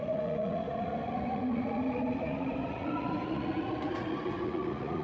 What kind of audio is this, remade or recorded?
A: remade